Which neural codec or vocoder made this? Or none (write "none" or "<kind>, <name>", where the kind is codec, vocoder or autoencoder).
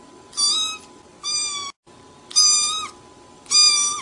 none